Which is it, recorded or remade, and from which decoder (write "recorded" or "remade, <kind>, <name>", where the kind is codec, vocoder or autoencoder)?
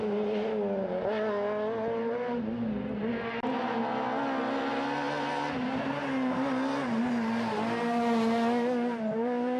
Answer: recorded